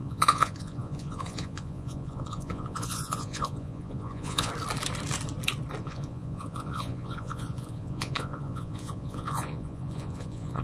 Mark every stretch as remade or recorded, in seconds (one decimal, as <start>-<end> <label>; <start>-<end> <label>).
0.0-4.5 remade; 4.5-5.8 recorded; 5.8-10.6 remade